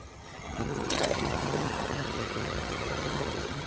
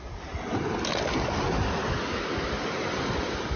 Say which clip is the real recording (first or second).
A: second